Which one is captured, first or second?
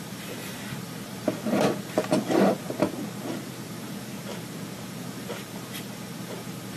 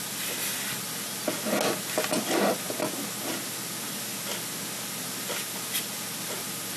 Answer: second